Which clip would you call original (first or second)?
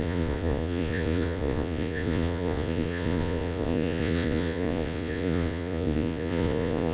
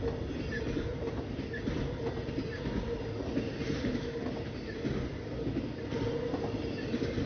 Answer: second